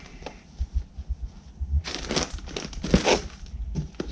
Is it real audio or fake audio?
real